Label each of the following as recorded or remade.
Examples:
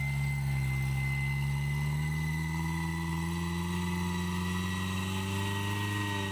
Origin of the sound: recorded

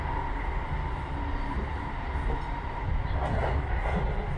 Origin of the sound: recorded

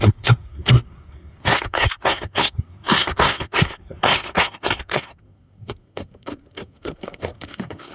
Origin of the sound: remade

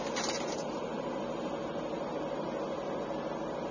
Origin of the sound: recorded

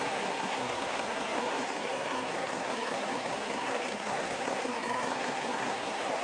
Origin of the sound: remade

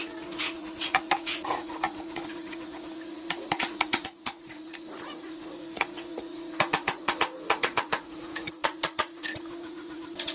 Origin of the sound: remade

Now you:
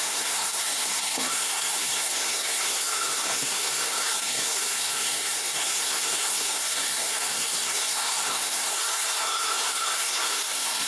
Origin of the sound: remade